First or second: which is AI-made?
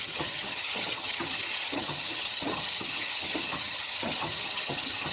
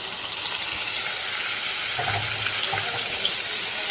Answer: first